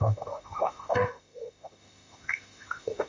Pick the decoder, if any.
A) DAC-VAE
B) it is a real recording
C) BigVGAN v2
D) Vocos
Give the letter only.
A